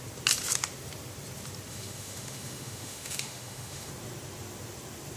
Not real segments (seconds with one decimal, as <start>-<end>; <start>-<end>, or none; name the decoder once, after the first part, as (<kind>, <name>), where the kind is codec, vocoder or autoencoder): 1.7-3.9 (autoencoder, DAC-VAE)